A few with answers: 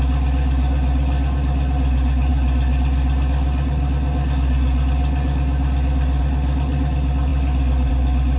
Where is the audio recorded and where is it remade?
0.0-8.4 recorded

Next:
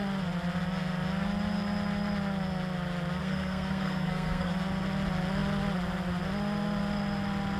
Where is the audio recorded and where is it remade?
0.0-3.2 recorded; 3.2-4.5 remade; 4.5-7.6 recorded

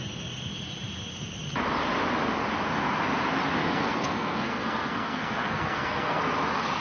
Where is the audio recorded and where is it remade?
0.0-3.6 recorded; 3.6-6.2 remade; 6.2-6.8 recorded

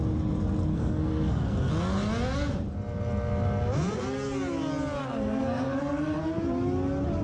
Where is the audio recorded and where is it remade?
0.0-0.7 recorded; 0.7-1.7 remade; 1.7-5.0 recorded; 5.0-6.2 remade; 6.2-7.2 recorded

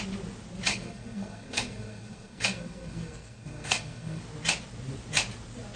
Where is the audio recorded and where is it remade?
0.0-0.7 recorded; 0.7-4.2 remade; 4.2-5.8 recorded

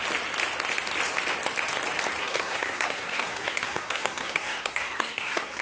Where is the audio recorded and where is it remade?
0.0-2.2 recorded; 2.2-5.6 remade